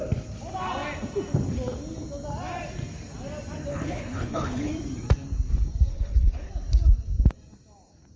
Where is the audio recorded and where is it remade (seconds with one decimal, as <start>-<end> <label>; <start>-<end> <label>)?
0.0-3.7 recorded; 3.7-4.7 remade; 4.7-5.9 recorded; 5.9-6.5 remade; 6.5-8.2 recorded